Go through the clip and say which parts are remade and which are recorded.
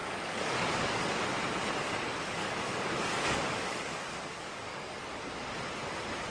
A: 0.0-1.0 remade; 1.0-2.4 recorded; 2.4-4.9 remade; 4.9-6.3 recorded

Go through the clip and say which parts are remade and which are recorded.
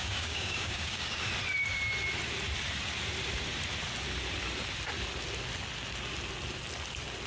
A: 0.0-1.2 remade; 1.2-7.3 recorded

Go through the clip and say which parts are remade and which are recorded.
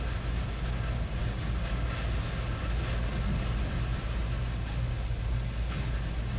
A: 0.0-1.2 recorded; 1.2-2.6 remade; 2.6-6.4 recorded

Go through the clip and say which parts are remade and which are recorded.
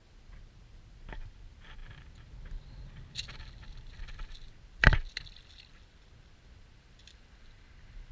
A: 0.0-8.1 recorded